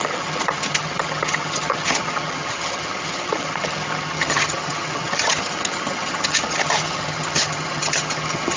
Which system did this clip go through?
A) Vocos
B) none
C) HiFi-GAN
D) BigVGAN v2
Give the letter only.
C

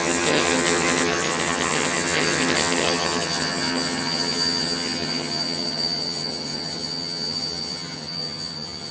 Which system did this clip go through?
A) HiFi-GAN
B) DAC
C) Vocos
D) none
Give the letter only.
A